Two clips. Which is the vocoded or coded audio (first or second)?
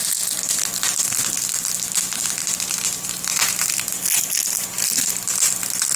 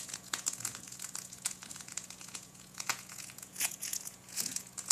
second